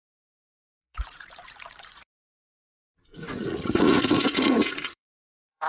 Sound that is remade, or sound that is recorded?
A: remade